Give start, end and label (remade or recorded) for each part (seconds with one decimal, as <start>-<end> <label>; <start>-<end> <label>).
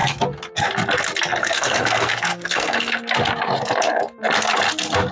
0.0-1.4 recorded; 1.4-3.1 remade; 3.1-5.1 recorded